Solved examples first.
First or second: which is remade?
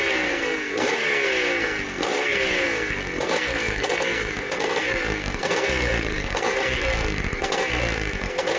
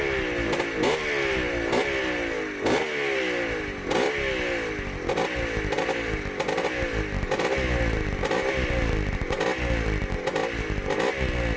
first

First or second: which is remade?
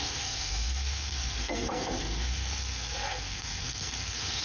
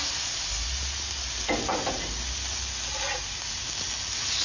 first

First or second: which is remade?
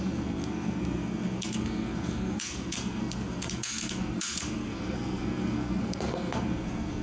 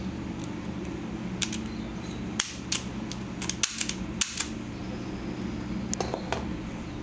first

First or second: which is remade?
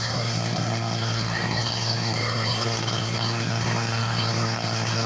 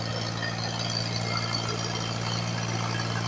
first